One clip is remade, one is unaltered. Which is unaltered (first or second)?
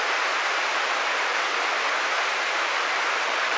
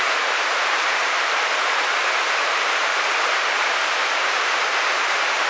first